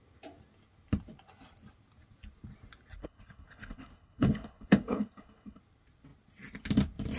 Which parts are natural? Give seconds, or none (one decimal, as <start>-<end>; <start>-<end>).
0.0-3.0; 5.6-7.2